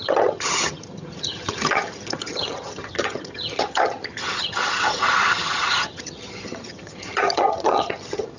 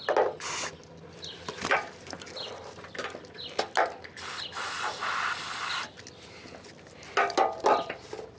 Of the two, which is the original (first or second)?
second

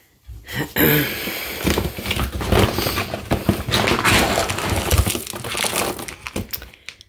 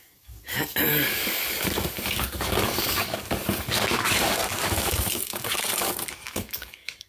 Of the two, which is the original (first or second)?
first